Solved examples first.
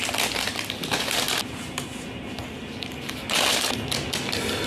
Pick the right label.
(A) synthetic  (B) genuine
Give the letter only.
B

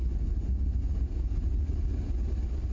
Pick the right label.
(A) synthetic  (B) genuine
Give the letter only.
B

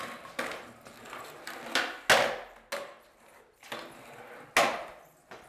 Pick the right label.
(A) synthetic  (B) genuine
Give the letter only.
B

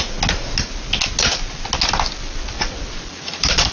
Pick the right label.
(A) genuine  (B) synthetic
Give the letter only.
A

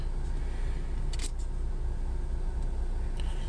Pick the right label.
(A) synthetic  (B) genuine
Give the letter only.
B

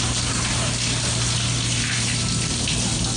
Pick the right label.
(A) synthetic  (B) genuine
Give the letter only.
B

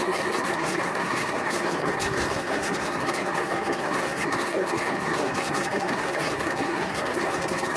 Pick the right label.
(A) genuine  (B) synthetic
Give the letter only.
B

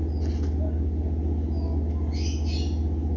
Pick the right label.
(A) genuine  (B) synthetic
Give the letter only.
A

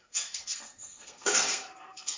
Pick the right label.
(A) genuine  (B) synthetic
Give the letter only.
B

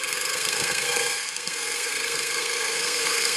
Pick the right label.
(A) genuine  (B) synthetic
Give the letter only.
B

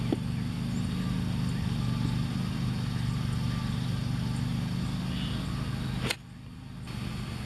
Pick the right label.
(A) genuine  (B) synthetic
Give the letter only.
A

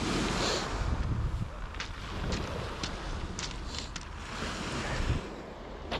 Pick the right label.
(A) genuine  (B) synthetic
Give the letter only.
A